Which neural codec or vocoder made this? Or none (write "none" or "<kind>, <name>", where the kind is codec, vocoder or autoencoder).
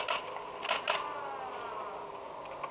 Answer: none